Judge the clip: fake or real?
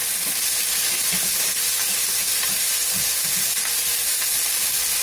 real